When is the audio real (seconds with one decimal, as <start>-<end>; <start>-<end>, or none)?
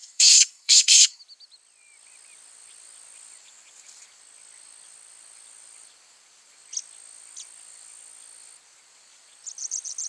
1.2-10.1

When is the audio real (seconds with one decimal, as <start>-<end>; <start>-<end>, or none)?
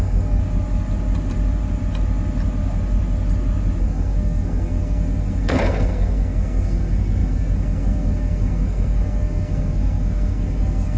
0.4-3.8